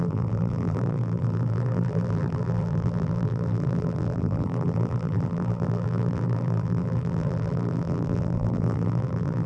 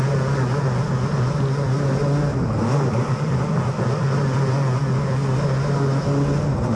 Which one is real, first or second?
second